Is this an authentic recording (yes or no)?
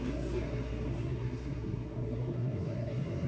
no